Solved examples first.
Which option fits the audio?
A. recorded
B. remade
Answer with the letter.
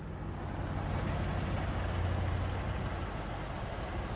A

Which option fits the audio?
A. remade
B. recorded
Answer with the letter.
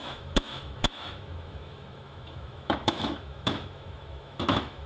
A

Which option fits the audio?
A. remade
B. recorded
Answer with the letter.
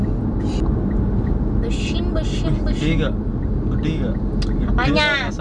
B